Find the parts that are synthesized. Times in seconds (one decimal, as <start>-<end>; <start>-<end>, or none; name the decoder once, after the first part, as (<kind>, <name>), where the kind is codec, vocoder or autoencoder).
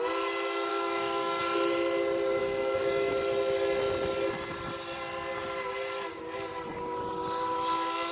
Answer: 0.7-1.4 (codec, DAC); 2.4-3.1